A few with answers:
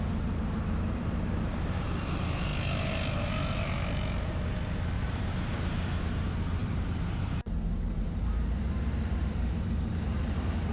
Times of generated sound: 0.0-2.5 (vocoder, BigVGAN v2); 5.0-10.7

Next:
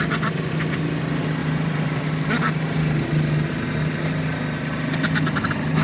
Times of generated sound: 1.4-2.4 (vocoder, BigVGAN v2)

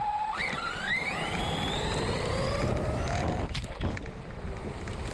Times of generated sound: 0.4-3.3 (vocoder, BigVGAN v2)

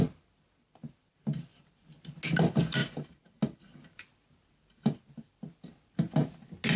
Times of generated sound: none

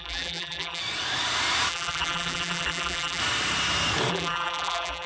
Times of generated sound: 0.0-0.8 (vocoder, BigVGAN v2); 1.7-3.2; 4.1-5.1